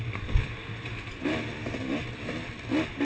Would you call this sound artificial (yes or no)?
no